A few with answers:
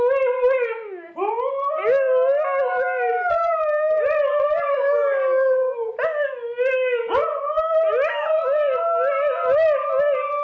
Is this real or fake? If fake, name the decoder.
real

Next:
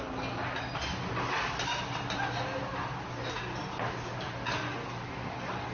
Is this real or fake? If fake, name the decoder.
real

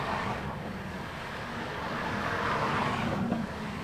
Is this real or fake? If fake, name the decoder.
fake, codec, DAC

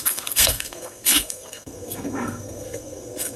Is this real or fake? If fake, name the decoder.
fake, codec, SNAC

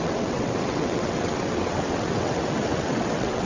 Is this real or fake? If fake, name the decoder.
fake, vocoder, WaveNeXt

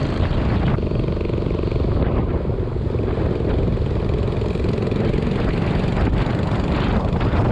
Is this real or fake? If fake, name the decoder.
real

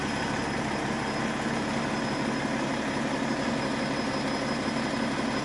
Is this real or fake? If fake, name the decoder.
real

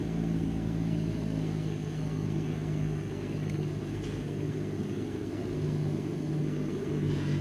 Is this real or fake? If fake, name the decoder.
fake, codec, SNAC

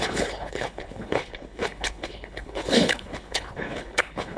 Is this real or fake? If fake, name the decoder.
fake, codec, HILCodec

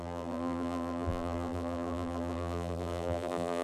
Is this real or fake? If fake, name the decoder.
fake, vocoder, BigVGAN v2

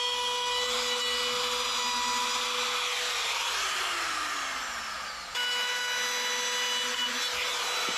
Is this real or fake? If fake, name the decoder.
real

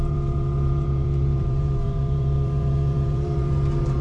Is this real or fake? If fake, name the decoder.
fake, vocoder, BigVGAN v2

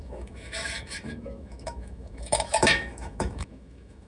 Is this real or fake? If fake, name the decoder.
fake, autoencoder, DAC-VAE